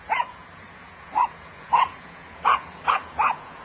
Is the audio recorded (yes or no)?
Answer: no